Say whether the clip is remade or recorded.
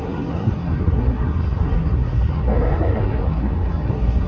remade